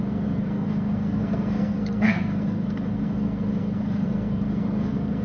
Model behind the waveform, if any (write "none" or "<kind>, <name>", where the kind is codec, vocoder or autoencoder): codec, SNAC